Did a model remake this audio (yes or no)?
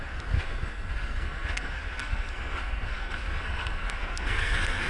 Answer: yes